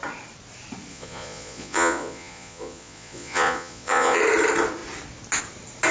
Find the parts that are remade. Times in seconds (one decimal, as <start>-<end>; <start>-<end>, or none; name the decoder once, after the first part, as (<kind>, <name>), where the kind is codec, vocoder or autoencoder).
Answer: 0.9-4.2 (vocoder, Vocos)